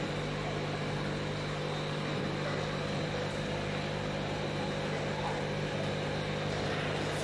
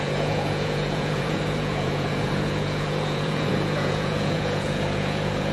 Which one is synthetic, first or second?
second